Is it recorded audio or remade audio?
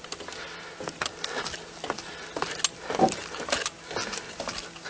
recorded